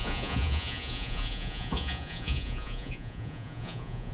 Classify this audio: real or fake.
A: fake